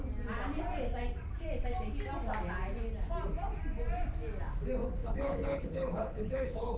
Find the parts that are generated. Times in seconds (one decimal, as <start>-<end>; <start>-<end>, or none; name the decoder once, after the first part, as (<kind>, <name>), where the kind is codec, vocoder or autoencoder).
5.0-6.8 (codec, HILCodec)